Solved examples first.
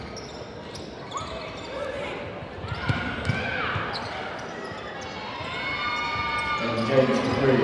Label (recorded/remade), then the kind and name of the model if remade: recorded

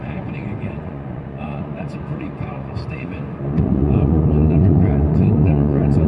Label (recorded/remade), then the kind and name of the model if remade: remade, vocoder, Vocos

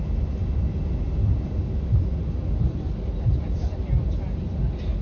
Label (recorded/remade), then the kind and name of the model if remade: recorded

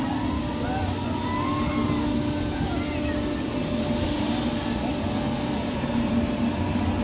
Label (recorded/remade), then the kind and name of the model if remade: recorded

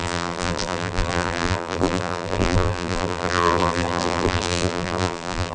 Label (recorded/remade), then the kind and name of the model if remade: remade, vocoder, BigVGAN v2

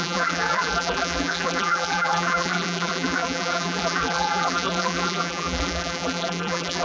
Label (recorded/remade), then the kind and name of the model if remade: remade, vocoder, BigVGAN v2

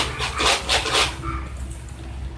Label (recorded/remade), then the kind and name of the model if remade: recorded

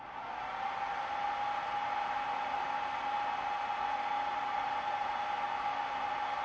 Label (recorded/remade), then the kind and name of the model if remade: recorded